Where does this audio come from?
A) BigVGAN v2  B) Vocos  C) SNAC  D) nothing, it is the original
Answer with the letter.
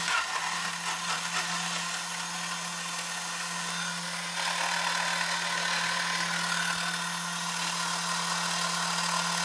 D